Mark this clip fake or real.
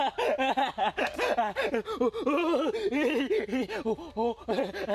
real